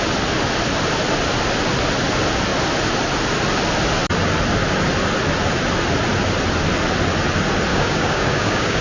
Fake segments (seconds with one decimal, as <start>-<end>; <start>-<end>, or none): 7.7-8.8